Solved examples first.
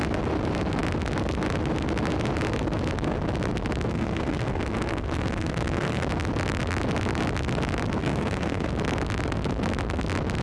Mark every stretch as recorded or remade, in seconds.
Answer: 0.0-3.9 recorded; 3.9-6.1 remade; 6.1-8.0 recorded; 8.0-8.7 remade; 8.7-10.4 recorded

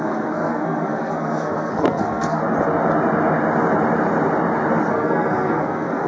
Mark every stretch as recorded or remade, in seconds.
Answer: 0.0-2.4 remade; 2.4-4.9 recorded; 4.9-6.1 remade

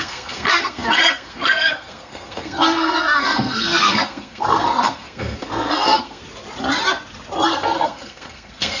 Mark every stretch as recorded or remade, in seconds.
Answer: 0.0-6.2 remade; 6.2-7.5 recorded; 7.5-8.8 remade

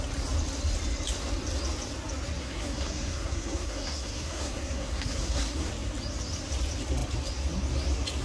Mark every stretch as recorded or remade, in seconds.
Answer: 0.0-2.4 recorded; 2.4-5.7 remade; 5.7-8.2 recorded